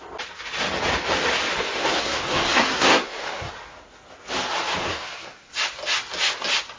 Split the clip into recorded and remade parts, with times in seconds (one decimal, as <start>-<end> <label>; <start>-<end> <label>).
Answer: 0.0-1.8 recorded; 1.8-3.5 remade; 3.5-4.8 recorded; 4.8-5.5 remade; 5.5-6.8 recorded